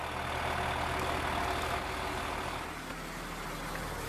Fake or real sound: real